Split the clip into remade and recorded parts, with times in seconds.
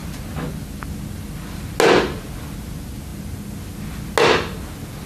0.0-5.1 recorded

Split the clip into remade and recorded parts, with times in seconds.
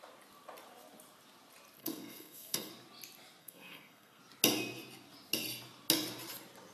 0.0-1.8 recorded; 1.8-2.7 remade; 2.7-3.4 recorded; 3.4-4.2 remade; 4.2-6.7 recorded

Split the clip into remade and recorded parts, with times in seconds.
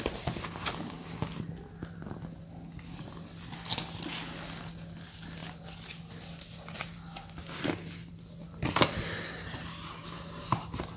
0.0-11.0 recorded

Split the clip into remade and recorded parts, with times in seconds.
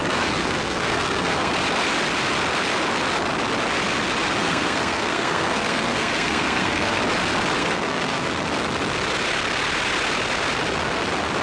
0.0-1.5 remade; 1.5-4.4 recorded; 4.4-7.0 remade; 7.0-7.6 recorded; 7.6-8.3 remade; 8.3-11.4 recorded